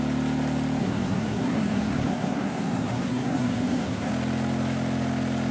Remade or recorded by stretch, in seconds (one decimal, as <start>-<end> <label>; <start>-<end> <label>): 0.0-0.8 recorded; 0.8-4.1 remade; 4.1-5.5 recorded